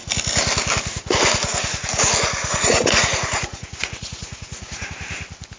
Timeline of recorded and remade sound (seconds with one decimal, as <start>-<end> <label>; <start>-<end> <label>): 0.0-2.4 recorded; 2.4-4.9 remade; 4.9-5.6 recorded